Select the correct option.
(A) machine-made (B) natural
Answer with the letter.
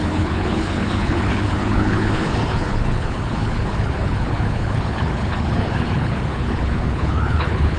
A